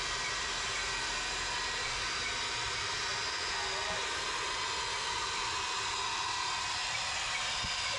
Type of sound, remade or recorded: recorded